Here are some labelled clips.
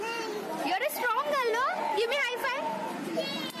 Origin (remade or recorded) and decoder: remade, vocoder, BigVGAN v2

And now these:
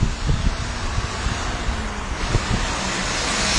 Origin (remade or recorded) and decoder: recorded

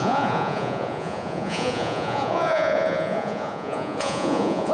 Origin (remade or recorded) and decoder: remade, vocoder, Vocos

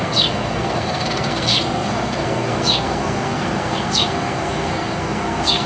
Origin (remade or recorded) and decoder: remade, codec, SNAC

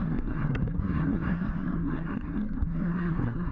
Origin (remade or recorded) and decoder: remade, codec, SNAC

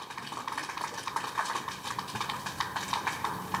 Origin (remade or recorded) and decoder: recorded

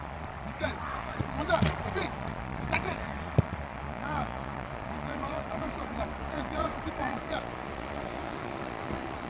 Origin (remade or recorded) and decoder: remade, vocoder, Vocos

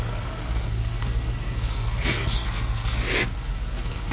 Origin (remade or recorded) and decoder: remade, codec, SNAC